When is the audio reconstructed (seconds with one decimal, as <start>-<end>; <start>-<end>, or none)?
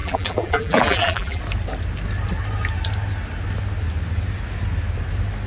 0.0-1.4